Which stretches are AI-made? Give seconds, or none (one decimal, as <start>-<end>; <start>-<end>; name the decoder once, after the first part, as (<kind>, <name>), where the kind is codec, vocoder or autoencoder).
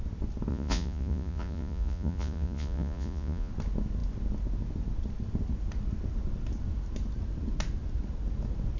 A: 0.5-3.5 (vocoder, Vocos)